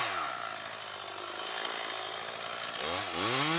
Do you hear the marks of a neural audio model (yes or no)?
no